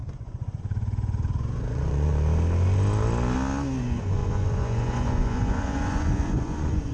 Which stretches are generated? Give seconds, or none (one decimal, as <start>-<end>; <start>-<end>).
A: 0.0-2.1; 3.8-6.9

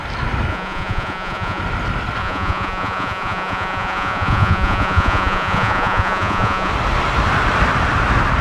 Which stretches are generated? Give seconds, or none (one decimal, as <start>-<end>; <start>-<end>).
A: 0.5-1.6; 2.2-6.7

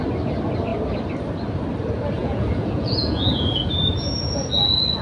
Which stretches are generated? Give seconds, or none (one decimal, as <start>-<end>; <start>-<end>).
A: 2.2-4.5

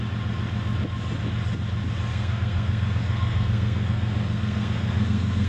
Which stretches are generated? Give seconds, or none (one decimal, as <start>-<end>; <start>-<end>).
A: 2.1-5.5

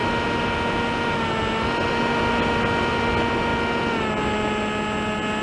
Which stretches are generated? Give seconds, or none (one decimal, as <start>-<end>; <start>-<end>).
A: none

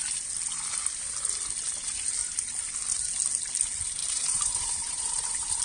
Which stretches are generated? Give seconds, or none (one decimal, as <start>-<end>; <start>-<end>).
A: 4.0-5.6

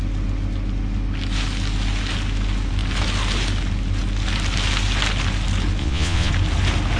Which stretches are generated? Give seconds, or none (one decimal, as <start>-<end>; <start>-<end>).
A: 5.8-6.3